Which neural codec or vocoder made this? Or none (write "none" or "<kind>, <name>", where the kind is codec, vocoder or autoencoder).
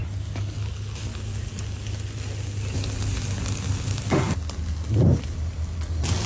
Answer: none